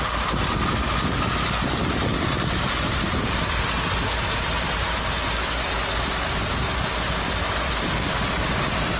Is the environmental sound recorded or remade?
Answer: recorded